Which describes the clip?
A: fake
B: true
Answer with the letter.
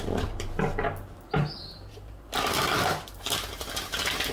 A